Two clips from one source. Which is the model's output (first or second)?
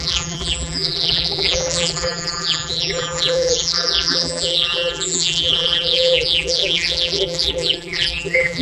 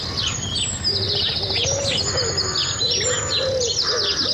first